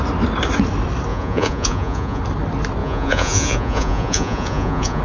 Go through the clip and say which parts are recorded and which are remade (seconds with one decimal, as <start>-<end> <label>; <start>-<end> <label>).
0.0-1.1 recorded; 1.1-2.2 remade; 2.2-2.8 recorded; 2.8-5.0 remade